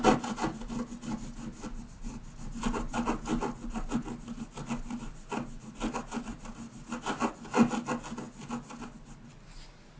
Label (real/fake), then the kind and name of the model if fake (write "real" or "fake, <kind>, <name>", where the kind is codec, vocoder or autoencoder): real